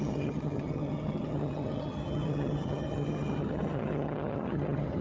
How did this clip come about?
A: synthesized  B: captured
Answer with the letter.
A